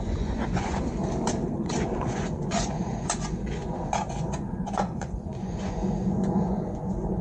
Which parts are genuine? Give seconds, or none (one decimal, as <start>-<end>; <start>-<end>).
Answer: 1.0-1.6